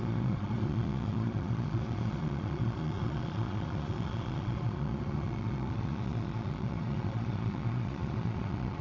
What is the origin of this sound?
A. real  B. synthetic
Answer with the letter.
B